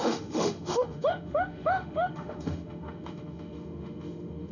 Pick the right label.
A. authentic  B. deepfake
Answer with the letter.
B